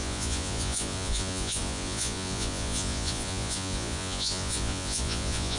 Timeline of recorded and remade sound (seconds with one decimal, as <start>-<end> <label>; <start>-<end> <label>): 0.0-5.6 remade